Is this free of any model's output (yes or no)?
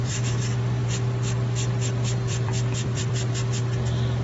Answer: no